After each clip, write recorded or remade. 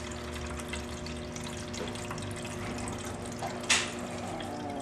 recorded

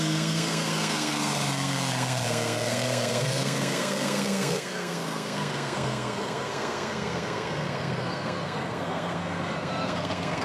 remade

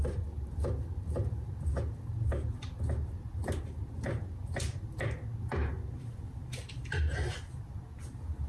recorded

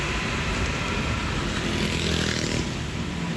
recorded